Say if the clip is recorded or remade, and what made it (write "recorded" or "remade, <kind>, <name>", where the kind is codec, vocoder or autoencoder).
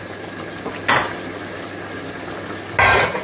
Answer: recorded